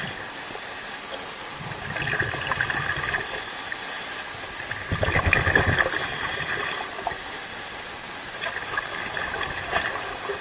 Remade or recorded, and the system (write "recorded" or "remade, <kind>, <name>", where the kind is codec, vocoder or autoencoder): recorded